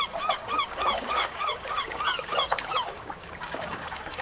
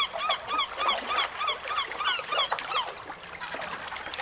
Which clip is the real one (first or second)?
second